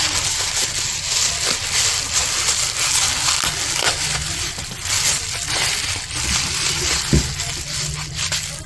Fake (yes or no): no